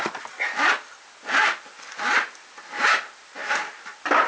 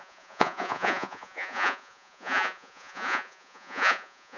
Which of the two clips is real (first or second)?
first